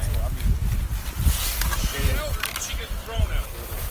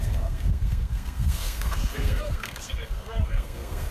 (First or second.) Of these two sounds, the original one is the first